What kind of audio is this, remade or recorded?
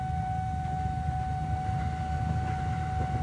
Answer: recorded